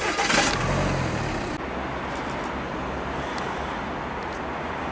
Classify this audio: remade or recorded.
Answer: recorded